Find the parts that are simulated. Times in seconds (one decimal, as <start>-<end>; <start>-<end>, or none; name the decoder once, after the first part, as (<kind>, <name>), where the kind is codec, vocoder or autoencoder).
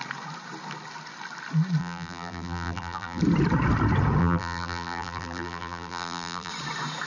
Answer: 1.8-3.2 (vocoder, BigVGAN v2); 4.2-6.5